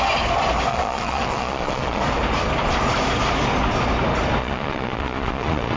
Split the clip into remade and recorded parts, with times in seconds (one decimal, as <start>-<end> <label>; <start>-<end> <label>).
0.0-0.7 recorded; 0.7-2.0 remade; 2.0-4.4 recorded; 4.4-5.8 remade